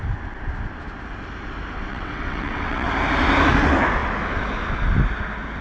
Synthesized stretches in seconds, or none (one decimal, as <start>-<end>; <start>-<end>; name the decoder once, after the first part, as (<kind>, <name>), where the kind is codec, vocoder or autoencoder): 1.9-2.9 (vocoder, WaveNeXt)

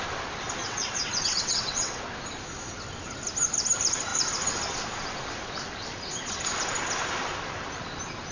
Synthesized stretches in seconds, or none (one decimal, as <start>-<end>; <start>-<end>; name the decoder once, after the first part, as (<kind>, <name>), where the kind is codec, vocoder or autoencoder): 0.6-2.0 (vocoder, WaveNeXt)

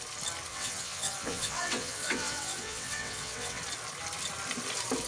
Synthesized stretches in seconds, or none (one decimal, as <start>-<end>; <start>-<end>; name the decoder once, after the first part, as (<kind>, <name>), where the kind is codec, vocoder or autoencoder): 0.5-3.6 (vocoder, WaveNeXt)

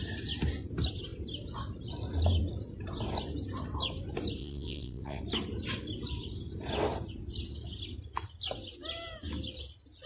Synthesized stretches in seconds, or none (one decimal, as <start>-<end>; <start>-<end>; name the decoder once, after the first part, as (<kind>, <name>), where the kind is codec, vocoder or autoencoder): 4.4-5.2 (vocoder, WaveNeXt)